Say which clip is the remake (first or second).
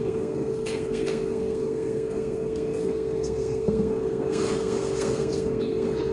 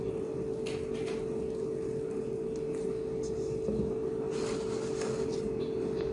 first